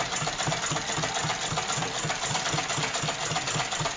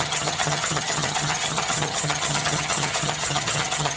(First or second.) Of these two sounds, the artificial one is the second